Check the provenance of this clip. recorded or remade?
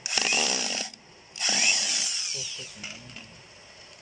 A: recorded